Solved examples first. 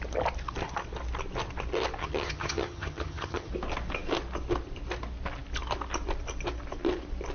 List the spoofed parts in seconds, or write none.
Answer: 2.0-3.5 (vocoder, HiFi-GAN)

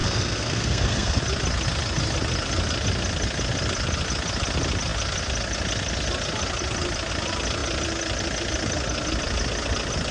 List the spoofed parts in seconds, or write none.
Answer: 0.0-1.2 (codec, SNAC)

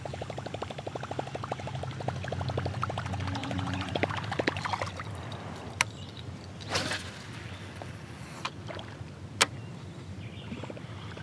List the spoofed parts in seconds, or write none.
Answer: 3.4-4.1 (vocoder, Vocos)

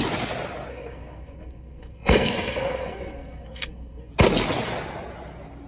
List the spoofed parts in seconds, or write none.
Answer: 0.7-4.1 (codec, SNAC)